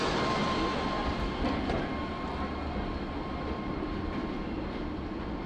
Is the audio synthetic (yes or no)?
no